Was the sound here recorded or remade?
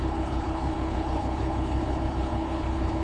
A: remade